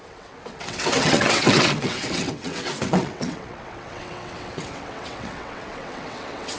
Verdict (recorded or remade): remade